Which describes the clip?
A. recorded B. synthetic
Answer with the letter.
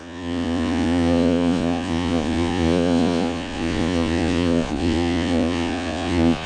B